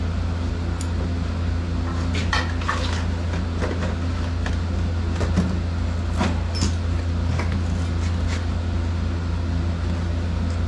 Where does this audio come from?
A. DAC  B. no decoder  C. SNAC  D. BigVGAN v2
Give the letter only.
B